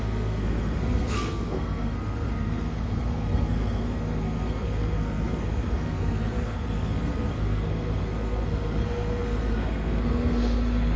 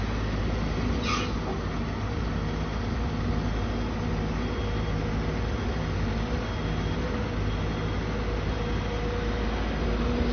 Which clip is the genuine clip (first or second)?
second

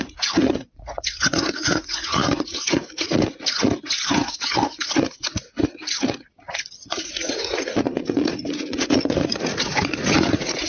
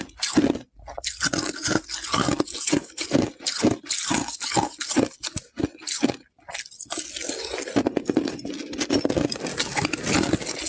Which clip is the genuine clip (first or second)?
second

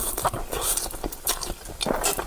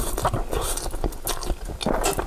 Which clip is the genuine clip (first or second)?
second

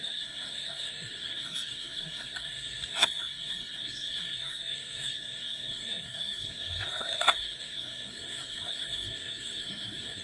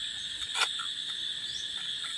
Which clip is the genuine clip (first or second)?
second